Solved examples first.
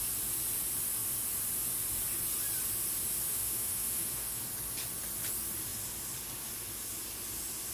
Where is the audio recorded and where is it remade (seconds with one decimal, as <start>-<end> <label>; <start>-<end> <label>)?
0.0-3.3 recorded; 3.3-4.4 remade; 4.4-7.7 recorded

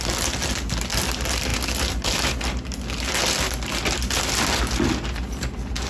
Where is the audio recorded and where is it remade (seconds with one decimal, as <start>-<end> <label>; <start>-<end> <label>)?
0.0-5.9 recorded

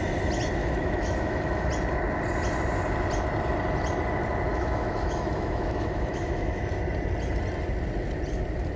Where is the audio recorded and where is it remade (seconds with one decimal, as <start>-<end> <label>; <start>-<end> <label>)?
0.0-0.6 recorded; 0.6-1.7 remade; 1.7-4.5 recorded; 4.5-6.7 remade; 6.7-8.8 recorded

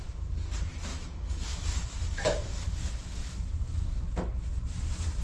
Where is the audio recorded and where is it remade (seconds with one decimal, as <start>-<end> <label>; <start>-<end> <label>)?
0.0-0.9 recorded; 0.9-4.0 remade; 4.0-5.2 recorded

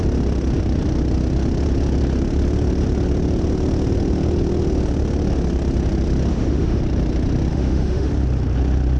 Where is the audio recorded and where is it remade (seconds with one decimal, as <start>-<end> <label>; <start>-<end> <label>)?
0.0-6.3 recorded; 6.3-6.8 remade; 6.8-7.5 recorded; 7.5-8.1 remade; 8.1-9.0 recorded